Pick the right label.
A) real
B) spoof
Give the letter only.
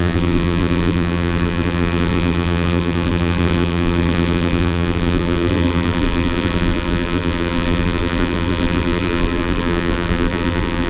B